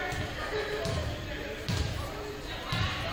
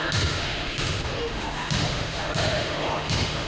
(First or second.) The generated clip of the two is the second